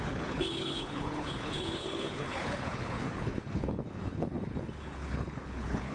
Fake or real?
fake